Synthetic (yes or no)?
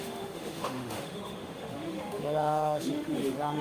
yes